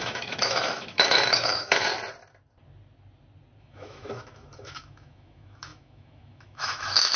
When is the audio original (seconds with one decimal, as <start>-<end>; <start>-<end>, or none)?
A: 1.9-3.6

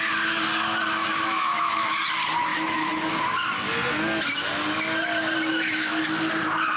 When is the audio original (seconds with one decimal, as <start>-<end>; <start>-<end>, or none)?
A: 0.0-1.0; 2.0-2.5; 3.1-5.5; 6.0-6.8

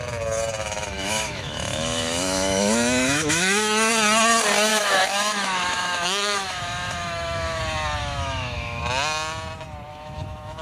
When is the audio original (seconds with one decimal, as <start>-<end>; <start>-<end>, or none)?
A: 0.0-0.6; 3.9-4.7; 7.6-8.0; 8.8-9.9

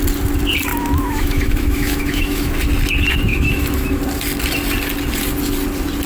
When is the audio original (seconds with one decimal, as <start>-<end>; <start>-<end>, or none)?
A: 0.0-0.7; 2.5-3.3; 4.0-6.1

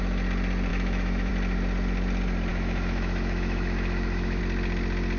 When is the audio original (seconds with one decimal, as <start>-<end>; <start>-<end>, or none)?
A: 0.0-0.7; 1.3-2.5; 4.4-5.2